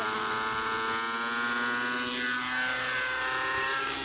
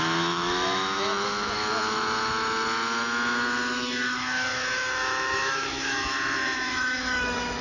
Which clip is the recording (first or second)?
first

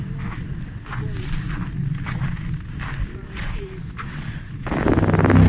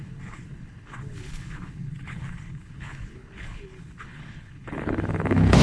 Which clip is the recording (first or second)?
first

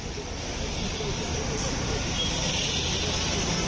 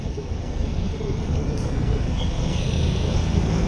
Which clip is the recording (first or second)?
first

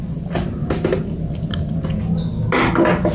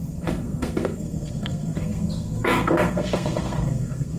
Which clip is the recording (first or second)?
first